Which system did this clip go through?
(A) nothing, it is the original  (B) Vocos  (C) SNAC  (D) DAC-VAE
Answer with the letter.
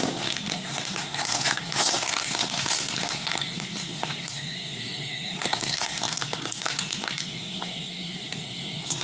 C